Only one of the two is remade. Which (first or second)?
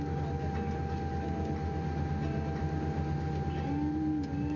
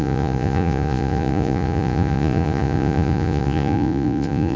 second